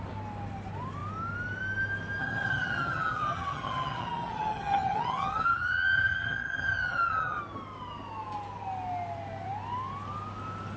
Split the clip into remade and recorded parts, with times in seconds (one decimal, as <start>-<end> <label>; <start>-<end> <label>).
0.0-2.2 recorded; 2.2-7.4 remade; 7.4-10.8 recorded